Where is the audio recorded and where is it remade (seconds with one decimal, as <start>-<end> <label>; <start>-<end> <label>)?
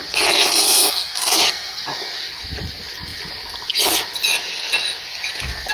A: 0.0-0.6 recorded; 0.6-1.8 remade; 1.8-5.7 recorded